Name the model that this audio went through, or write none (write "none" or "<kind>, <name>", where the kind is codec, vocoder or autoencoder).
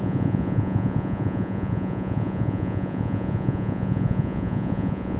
vocoder, Vocos